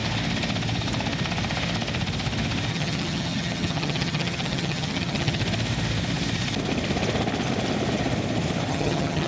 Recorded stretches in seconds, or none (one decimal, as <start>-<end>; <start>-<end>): 0.0-2.7; 5.4-8.7